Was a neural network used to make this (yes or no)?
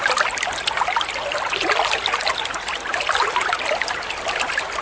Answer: no